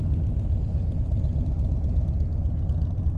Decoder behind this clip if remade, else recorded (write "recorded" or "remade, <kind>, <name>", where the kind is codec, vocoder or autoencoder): recorded